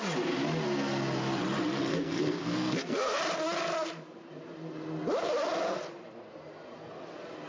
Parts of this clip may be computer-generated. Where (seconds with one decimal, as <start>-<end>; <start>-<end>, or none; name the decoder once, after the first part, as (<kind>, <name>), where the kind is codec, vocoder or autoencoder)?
1.9-3.2 (codec, SNAC)